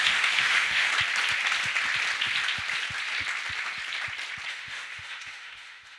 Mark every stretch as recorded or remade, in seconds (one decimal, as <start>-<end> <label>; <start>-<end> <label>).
0.0-0.9 remade; 0.9-4.5 recorded; 4.5-6.0 remade